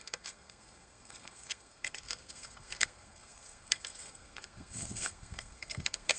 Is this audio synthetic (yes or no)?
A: yes